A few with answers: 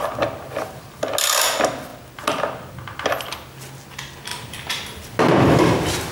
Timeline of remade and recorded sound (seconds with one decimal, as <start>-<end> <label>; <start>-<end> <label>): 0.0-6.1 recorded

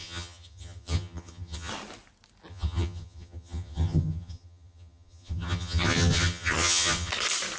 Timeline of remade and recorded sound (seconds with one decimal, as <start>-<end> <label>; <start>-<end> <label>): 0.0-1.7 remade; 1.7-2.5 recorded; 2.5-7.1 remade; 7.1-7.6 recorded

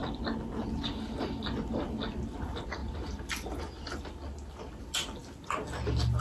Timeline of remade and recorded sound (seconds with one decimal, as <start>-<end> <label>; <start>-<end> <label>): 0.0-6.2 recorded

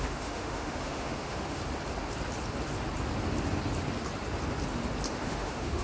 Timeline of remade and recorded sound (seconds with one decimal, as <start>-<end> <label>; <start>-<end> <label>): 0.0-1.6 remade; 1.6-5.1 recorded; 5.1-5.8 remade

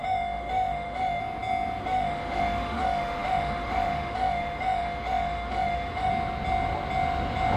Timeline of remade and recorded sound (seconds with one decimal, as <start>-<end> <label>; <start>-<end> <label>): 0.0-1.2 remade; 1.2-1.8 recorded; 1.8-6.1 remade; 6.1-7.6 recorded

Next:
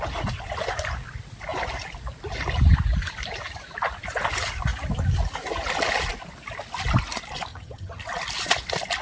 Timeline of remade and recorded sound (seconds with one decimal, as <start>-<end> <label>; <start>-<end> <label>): 0.0-7.5 recorded; 7.5-8.0 remade; 8.0-9.0 recorded